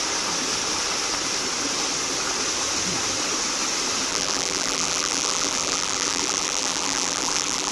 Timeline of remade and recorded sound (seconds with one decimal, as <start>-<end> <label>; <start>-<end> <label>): 0.0-4.1 recorded; 4.1-7.7 remade